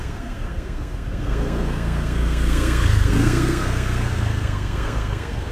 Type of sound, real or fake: fake